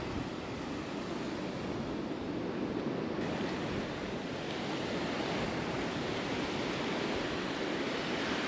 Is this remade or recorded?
recorded